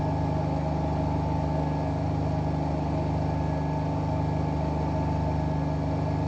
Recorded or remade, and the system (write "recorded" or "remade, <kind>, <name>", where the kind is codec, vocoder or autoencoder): recorded